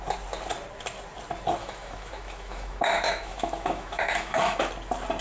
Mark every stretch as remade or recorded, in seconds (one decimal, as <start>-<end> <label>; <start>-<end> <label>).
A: 0.0-1.6 recorded; 1.6-4.7 remade; 4.7-5.2 recorded